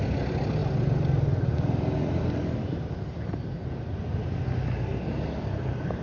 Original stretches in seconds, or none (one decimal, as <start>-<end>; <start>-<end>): 0.0-6.0